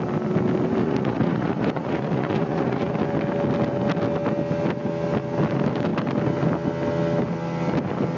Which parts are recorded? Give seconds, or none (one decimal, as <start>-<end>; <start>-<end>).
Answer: 0.0-0.8; 2.9-8.2